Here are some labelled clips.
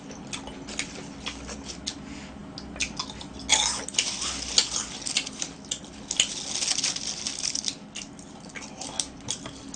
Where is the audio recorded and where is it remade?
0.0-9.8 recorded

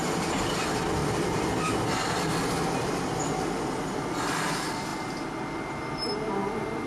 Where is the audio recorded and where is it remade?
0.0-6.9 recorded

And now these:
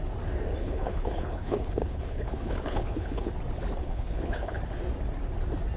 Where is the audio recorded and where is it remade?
0.0-0.6 recorded; 0.6-3.3 remade; 3.3-3.8 recorded; 3.8-4.6 remade; 4.6-5.8 recorded